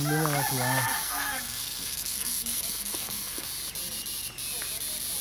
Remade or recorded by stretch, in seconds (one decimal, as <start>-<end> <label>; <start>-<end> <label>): 0.0-1.0 recorded; 1.0-3.5 remade; 3.5-5.2 recorded